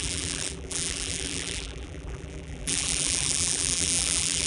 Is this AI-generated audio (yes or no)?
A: yes